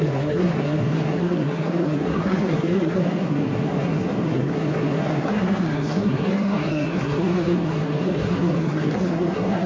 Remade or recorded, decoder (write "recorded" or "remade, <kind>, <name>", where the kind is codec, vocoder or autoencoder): remade, codec, SNAC